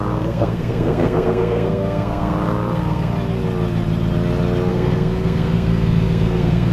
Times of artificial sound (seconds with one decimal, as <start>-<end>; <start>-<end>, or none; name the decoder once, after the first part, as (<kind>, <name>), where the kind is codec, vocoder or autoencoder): 0.0-3.1 (codec, SNAC); 4.7-6.7